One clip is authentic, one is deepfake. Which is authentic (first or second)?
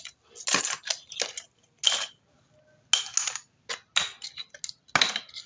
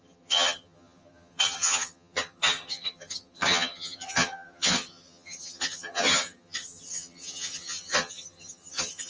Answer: first